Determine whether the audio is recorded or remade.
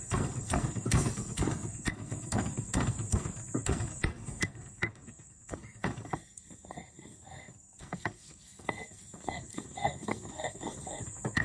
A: remade